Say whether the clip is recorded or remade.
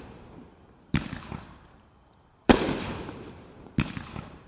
remade